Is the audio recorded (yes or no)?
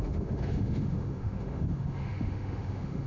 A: no